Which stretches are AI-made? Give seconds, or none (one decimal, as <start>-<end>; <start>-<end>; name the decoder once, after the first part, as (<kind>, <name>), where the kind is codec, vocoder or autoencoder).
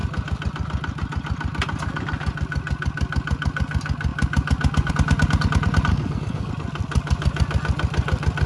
5.9-6.5 (codec, SNAC)